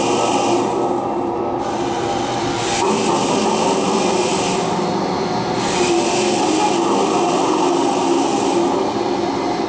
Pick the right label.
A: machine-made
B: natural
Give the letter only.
B